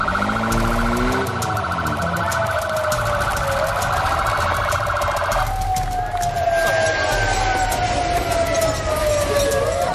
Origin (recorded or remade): recorded